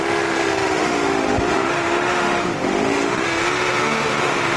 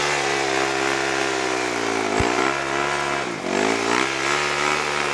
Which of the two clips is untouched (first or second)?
second